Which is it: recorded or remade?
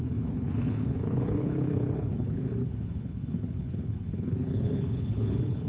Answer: remade